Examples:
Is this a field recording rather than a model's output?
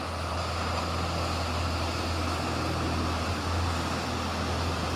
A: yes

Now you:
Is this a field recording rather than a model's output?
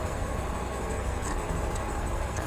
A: no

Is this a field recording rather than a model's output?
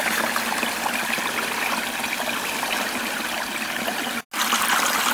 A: yes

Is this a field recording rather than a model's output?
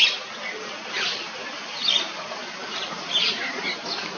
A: yes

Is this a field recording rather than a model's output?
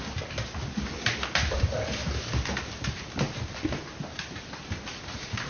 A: yes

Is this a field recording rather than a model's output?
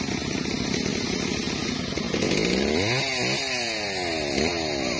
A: yes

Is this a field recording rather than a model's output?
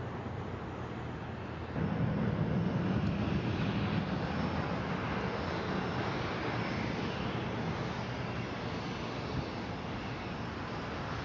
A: yes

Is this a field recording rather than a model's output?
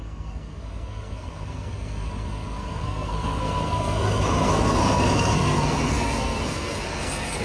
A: no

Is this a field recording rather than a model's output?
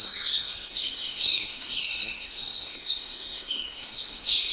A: no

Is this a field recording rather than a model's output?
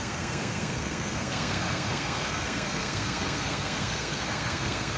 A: no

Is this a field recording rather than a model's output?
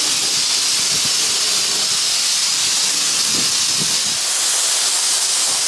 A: yes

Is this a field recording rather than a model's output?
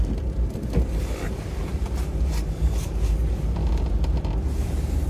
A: yes